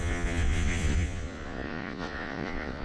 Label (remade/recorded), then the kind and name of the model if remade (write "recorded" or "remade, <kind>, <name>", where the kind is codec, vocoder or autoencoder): remade, vocoder, Vocos